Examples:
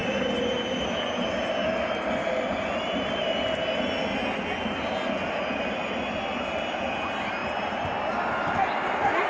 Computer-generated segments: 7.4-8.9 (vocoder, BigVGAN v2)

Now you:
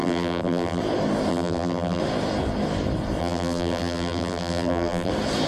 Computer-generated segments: 0.0-0.8 (vocoder, BigVGAN v2); 1.3-2.0; 3.2-5.1